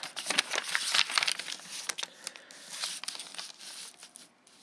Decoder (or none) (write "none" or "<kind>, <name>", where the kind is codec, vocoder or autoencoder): none